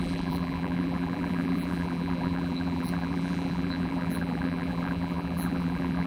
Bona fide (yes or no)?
no